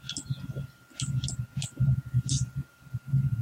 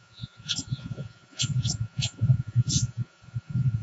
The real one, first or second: first